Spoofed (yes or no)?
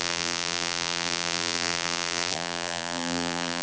yes